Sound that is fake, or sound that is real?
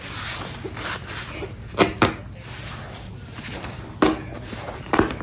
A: real